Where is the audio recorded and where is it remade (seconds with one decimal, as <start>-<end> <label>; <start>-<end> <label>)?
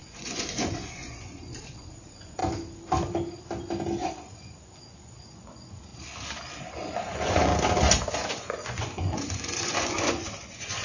0.0-2.4 remade; 2.4-4.0 recorded; 4.0-5.9 remade; 5.9-6.6 recorded; 6.6-7.5 remade; 7.5-8.3 recorded; 8.3-10.8 remade